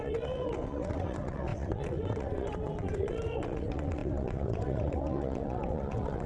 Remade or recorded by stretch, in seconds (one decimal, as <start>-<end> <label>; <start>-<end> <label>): 0.0-6.3 remade